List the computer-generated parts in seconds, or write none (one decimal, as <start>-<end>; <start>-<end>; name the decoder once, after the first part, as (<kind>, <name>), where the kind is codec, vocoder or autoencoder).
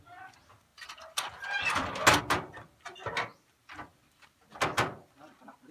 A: none